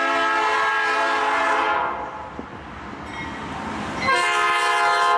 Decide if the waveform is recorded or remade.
recorded